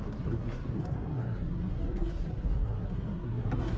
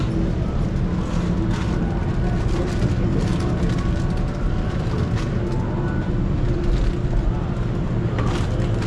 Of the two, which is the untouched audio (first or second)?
second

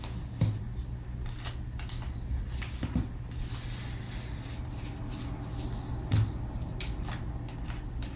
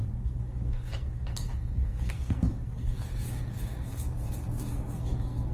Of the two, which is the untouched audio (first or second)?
first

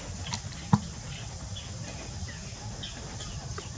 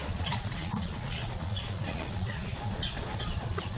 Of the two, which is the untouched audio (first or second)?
first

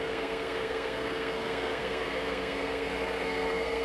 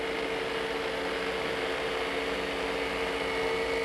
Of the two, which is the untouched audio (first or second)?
second